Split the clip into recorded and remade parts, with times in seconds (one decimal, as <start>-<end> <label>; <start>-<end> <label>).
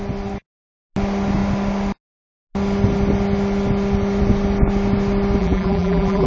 0.0-5.4 recorded; 5.4-6.3 remade